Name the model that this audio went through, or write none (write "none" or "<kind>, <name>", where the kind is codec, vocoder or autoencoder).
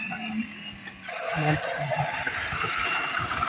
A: none